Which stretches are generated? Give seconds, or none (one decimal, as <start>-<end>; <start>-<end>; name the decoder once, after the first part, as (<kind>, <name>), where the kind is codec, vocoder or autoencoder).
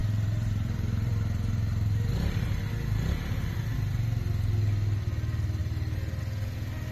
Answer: 0.0-2.6 (vocoder, BigVGAN v2); 5.6-6.2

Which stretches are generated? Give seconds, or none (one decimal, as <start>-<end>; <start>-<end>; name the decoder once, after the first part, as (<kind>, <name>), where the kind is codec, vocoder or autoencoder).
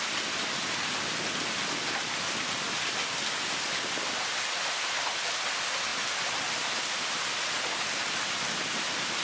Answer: none